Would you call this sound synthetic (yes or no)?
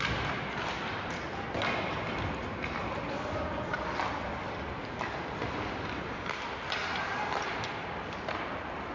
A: no